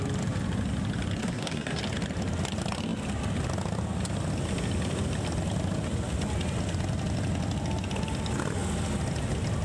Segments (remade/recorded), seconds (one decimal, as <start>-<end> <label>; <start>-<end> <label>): 0.0-1.2 recorded; 1.2-1.8 remade; 1.8-9.6 recorded